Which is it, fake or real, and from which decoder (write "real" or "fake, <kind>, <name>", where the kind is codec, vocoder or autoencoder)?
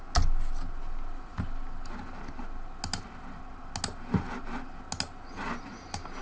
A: real